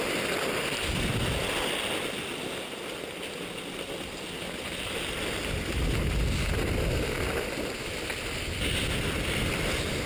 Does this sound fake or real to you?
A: real